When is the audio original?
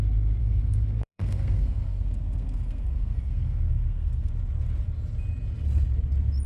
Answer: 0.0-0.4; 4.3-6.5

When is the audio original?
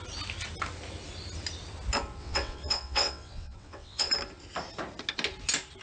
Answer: 0.0-2.2; 4.1-5.8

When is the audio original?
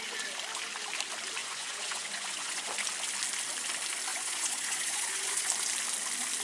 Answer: 0.0-1.4; 2.7-4.1; 5.5-6.4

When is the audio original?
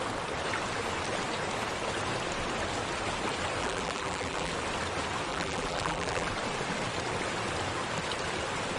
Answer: 0.0-3.6; 4.5-5.3; 6.3-8.8